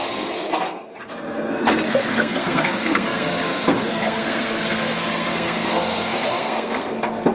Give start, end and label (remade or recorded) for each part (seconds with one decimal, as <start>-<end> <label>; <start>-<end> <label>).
0.0-7.3 remade

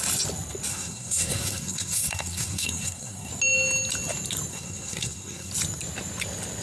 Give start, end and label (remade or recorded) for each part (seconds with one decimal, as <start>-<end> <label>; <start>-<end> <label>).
0.0-0.7 recorded; 0.7-3.3 remade; 3.3-4.5 recorded; 4.5-5.5 remade; 5.5-6.6 recorded